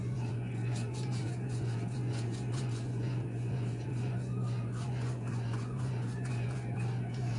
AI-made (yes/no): yes